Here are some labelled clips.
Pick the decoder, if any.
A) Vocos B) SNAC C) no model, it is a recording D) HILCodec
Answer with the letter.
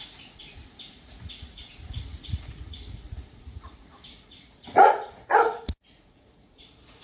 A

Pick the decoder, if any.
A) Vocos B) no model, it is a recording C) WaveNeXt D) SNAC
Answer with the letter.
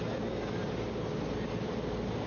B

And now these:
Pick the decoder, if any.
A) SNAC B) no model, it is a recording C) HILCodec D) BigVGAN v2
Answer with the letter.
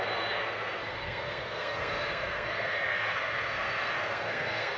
A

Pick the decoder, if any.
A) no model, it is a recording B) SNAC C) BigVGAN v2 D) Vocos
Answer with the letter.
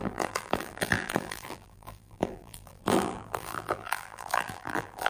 C